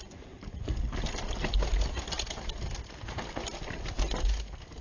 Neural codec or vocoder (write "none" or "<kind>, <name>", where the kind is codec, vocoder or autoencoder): none